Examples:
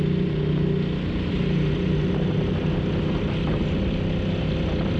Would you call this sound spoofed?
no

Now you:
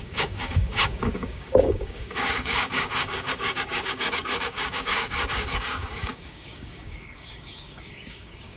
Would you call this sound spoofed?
yes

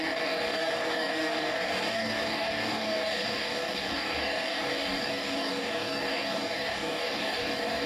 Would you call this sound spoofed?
yes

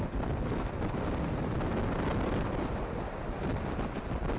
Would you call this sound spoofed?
no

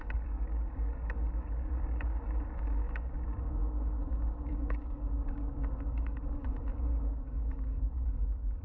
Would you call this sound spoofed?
yes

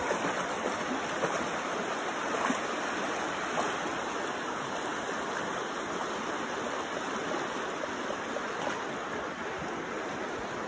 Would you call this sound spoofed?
no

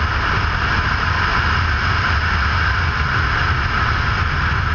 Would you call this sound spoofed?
no